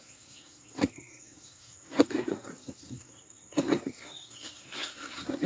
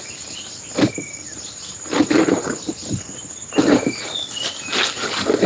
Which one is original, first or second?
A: second